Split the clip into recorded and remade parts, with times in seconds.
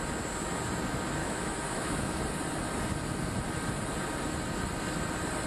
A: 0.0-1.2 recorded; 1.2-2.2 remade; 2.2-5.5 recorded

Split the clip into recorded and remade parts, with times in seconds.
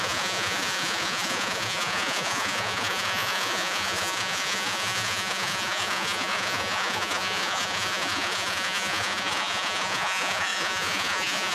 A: 0.0-11.5 remade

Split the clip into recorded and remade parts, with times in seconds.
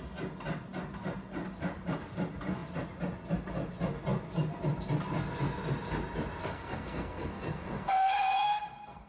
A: 0.0-6.4 recorded; 6.4-9.1 remade